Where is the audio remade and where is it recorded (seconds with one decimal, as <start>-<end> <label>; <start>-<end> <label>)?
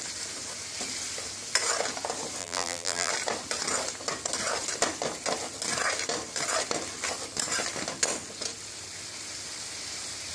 0.0-2.4 recorded; 2.4-3.1 remade; 3.1-10.3 recorded